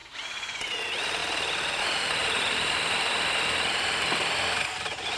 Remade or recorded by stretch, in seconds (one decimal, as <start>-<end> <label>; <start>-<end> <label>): 0.0-2.2 recorded; 2.2-3.1 remade; 3.1-5.2 recorded